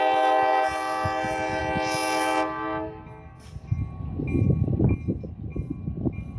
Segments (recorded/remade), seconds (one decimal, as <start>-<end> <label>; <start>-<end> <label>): 0.0-6.4 recorded